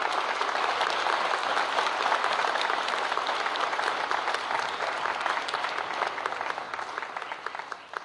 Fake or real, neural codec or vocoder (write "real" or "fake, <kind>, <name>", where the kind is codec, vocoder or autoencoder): real